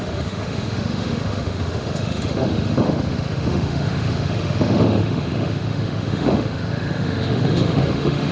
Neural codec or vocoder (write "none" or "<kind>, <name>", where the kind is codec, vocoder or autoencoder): autoencoder, DAC-VAE